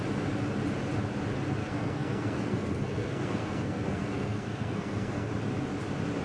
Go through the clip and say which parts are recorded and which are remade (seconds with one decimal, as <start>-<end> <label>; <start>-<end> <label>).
0.0-1.6 recorded; 1.6-5.3 remade; 5.3-6.2 recorded